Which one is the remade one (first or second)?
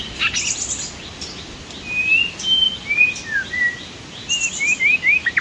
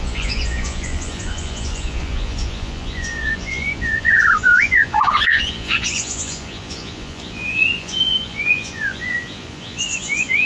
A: second